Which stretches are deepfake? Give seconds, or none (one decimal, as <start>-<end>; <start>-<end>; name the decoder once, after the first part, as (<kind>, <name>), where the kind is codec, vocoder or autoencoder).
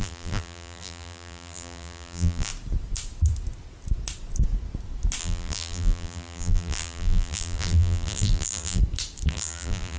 0.0-2.5 (vocoder, BigVGAN v2); 5.2-8.8; 9.3-10.0